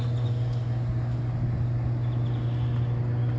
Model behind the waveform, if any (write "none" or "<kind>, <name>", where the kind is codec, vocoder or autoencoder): none